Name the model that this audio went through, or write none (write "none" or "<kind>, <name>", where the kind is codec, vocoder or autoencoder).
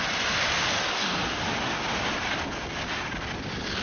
none